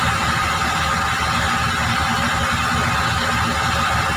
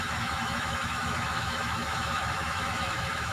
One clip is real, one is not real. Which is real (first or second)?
first